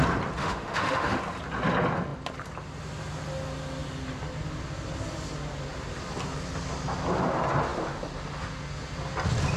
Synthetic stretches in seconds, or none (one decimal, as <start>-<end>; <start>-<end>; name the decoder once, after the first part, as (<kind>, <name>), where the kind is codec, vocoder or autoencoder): 0.4-1.2 (autoencoder, DAC-VAE)